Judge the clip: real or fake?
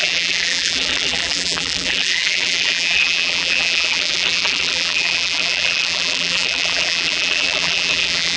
fake